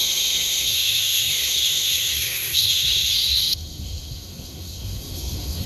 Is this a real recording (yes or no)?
no